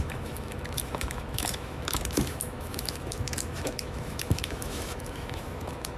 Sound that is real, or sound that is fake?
fake